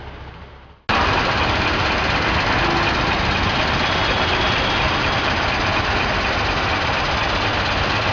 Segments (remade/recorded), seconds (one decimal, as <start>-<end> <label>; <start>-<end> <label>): 0.0-4.0 recorded; 4.0-4.5 remade; 4.5-8.1 recorded